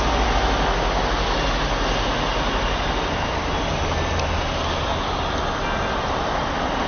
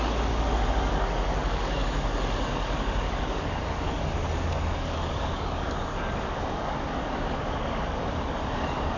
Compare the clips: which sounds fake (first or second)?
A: second